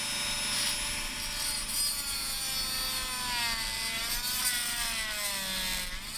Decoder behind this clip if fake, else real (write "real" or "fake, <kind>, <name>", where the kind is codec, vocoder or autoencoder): real